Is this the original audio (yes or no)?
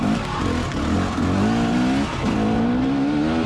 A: yes